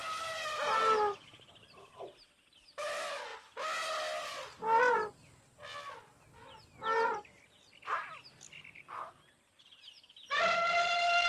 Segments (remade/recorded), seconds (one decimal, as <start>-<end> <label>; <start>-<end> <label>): 0.0-8.0 recorded; 8.0-11.3 remade